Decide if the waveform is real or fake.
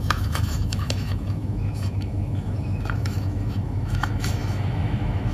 fake